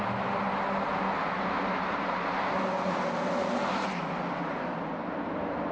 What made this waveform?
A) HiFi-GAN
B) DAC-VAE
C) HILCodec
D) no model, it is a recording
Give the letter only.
D